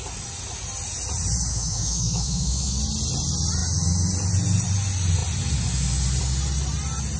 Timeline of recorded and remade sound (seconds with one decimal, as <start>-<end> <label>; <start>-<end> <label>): 0.0-1.5 recorded; 1.5-2.8 remade; 2.8-7.2 recorded